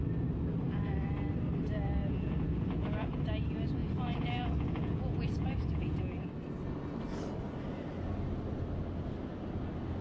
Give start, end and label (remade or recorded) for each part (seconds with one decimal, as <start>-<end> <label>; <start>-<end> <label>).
0.0-2.0 recorded; 2.0-3.1 remade; 3.1-3.8 recorded; 3.8-6.0 remade; 6.0-10.0 recorded